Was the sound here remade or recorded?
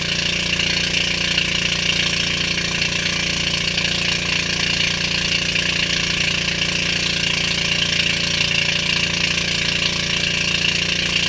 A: recorded